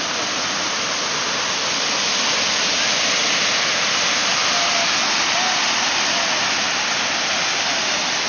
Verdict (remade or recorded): recorded